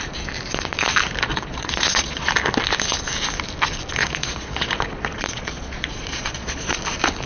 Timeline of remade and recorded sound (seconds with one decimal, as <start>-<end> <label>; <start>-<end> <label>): 0.0-1.3 recorded; 1.3-2.3 remade; 2.3-4.0 recorded; 4.0-6.8 remade; 6.8-7.3 recorded